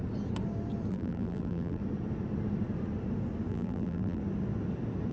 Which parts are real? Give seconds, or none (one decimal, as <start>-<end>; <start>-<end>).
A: 0.0-0.9; 1.8-3.5; 4.2-5.1